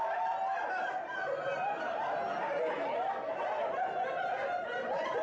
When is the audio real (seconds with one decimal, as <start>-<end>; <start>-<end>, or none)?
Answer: 0.0-5.2